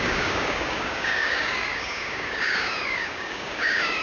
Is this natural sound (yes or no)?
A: no